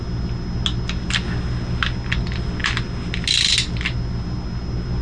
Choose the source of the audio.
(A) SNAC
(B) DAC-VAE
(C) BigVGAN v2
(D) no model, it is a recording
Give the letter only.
D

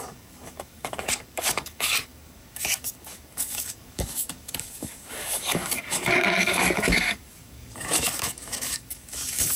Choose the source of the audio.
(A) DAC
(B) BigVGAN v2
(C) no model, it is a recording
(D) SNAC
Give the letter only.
A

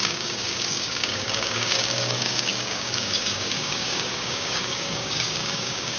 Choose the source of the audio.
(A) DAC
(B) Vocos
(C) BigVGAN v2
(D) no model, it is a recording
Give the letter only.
A